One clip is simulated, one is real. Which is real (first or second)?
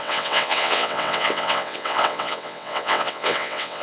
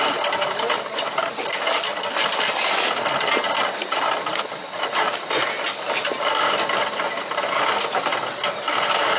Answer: second